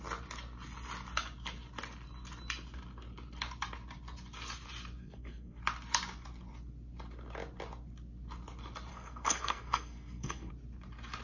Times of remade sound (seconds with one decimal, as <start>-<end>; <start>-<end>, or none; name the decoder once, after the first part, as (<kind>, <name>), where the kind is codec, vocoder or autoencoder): 5.0-5.6 (codec, SNAC); 8.9-10.5